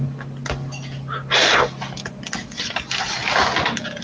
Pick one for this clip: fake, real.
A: real